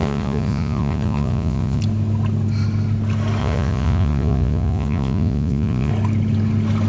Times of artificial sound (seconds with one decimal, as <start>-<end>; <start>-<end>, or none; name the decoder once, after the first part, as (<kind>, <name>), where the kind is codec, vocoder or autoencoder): 0.0-1.8 (vocoder, Vocos); 3.4-5.9